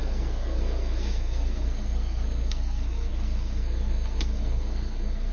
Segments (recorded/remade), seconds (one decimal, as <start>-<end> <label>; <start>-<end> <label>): 0.0-5.3 remade